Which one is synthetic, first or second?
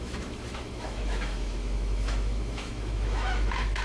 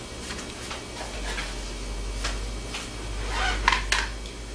first